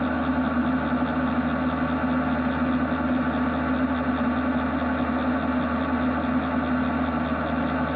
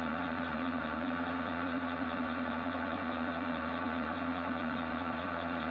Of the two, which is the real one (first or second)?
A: first